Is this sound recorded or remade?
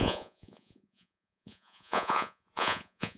remade